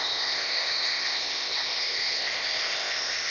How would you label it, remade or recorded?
remade